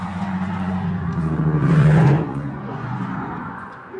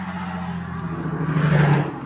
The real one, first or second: second